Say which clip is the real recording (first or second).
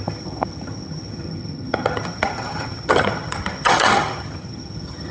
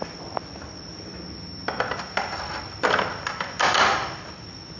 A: second